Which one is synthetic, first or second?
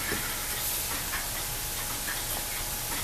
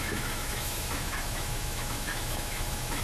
second